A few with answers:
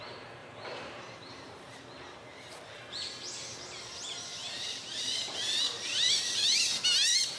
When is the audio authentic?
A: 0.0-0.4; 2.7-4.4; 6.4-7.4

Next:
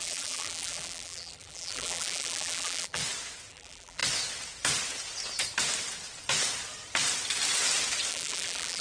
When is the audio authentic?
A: 3.0-3.5; 4.0-8.1

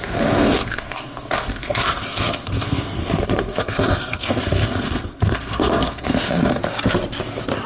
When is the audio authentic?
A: 6.6-7.7